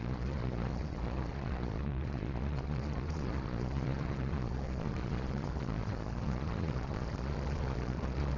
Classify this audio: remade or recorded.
remade